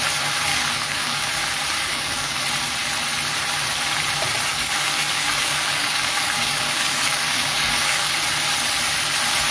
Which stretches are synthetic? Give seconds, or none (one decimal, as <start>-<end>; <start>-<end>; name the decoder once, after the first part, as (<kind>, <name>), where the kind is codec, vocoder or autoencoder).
0.5-1.3 (codec, DAC); 1.9-2.4; 4.5-8.1